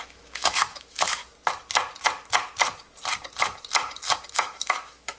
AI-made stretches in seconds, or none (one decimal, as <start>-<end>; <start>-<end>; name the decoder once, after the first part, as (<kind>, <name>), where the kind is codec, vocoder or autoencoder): 0.0-1.2 (autoencoder, DAC-VAE); 4.3-5.2